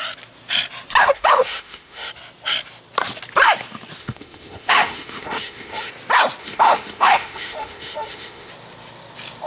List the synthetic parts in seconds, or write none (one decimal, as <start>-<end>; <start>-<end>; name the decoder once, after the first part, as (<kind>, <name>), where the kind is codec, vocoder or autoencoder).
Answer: 1.0-2.1 (autoencoder, DAC-VAE); 4.0-5.9; 6.4-8.5